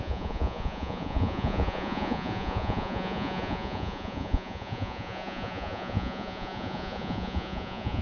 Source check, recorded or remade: remade